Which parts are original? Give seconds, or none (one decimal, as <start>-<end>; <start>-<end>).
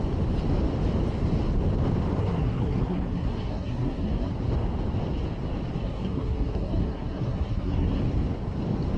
0.0-2.2; 4.3-5.8; 8.0-9.0